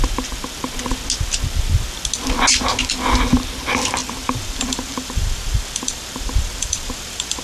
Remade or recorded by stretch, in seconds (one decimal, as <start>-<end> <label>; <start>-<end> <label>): 0.0-4.0 recorded; 4.0-7.4 remade